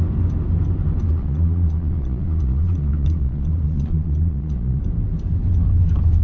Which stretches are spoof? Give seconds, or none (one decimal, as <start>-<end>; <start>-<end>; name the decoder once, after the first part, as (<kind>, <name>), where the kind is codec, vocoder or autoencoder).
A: 1.1-4.8 (vocoder, Vocos)